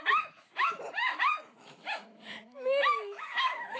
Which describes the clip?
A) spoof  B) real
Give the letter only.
A